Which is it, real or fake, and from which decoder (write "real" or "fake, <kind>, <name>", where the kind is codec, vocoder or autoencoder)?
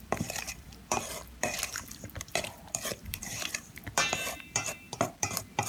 fake, vocoder, BigVGAN v2